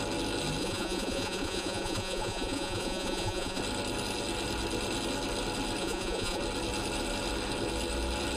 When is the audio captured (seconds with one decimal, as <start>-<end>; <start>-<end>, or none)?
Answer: 0.0-0.6; 3.6-5.8; 6.4-8.4